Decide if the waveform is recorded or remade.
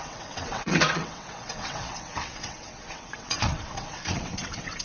remade